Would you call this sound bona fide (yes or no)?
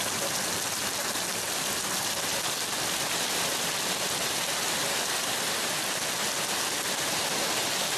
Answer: yes